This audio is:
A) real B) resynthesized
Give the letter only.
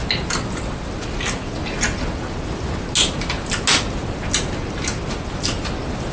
A